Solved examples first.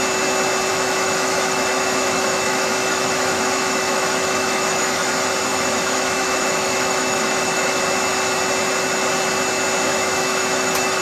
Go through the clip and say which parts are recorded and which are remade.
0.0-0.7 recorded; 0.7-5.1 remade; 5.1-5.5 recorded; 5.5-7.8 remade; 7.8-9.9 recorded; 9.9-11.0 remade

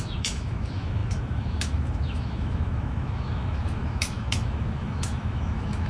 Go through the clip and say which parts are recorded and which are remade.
0.0-5.9 remade

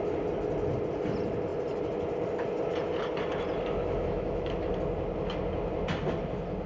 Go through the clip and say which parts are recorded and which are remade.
0.0-3.8 recorded; 3.8-4.7 remade; 4.7-6.7 recorded